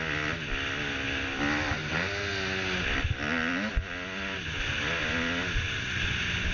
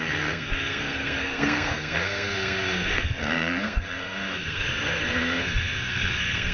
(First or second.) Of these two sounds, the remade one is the second